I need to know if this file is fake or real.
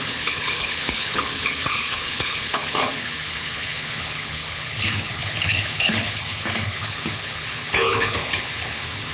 fake